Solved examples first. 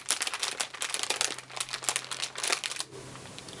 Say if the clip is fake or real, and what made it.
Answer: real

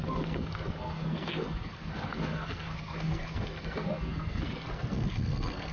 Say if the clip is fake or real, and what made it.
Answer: fake, codec, SNAC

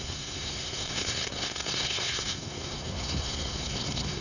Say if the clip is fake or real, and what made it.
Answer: fake, codec, SNAC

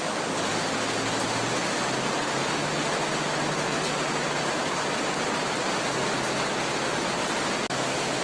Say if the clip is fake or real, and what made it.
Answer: real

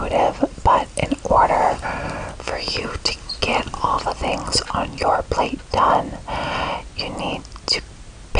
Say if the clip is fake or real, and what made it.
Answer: real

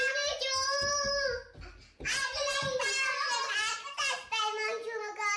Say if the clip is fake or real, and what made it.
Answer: real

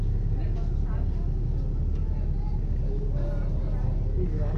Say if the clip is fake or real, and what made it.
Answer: real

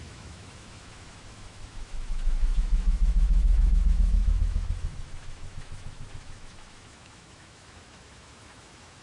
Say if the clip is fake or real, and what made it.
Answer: fake, autoencoder, DAC-VAE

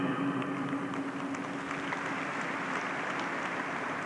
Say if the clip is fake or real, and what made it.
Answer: real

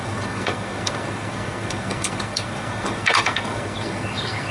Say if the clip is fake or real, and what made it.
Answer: fake, codec, SNAC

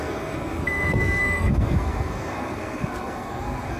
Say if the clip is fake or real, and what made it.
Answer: fake, codec, SNAC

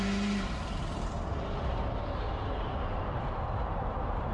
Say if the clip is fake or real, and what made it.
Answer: fake, vocoder, BigVGAN v2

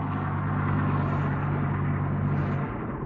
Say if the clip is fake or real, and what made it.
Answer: real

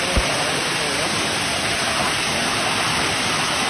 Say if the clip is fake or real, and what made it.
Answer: real